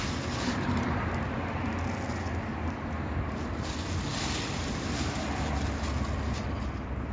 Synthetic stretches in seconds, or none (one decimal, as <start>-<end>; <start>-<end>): none